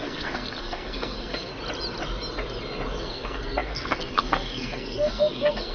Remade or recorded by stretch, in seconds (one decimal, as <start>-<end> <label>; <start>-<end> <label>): 0.0-1.5 remade; 1.5-3.0 recorded; 3.0-5.7 remade